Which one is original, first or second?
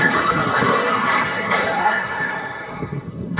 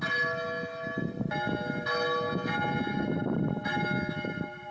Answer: second